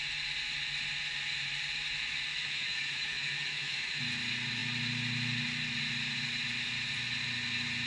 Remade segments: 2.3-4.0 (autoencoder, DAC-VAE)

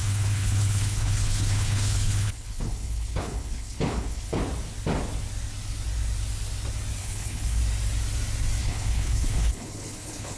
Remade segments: 0.0-4.4 (codec, HILCodec); 7.0-7.6; 8.6-10.4

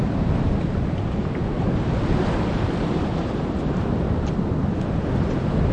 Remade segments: 0.0-1.4 (vocoder, BigVGAN v2); 2.6-5.7

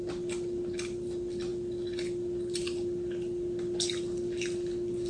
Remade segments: none

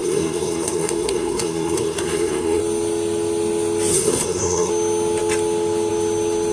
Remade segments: 0.0-2.6 (codec, SNAC); 3.9-4.7